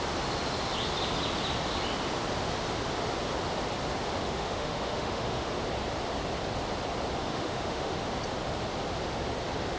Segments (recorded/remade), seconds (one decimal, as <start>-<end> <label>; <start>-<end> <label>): 0.0-4.2 recorded; 4.2-5.5 remade; 5.5-7.2 recorded; 7.2-8.1 remade; 8.1-9.8 recorded